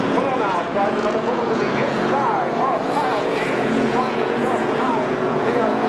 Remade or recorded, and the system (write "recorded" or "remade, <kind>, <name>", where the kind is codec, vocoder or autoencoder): remade, vocoder, Vocos